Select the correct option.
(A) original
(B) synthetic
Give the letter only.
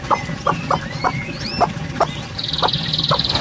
A